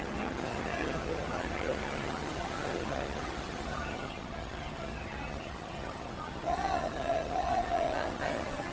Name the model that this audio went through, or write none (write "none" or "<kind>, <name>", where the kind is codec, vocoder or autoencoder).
vocoder, HiFi-GAN